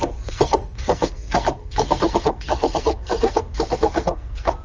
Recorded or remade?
remade